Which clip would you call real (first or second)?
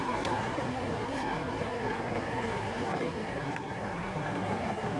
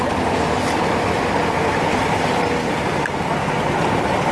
second